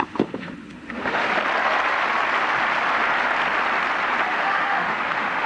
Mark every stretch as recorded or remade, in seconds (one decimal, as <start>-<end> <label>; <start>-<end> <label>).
0.0-1.3 remade; 1.3-4.3 recorded; 4.3-5.5 remade